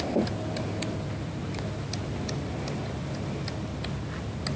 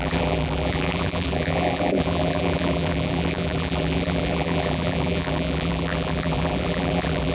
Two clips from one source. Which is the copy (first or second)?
second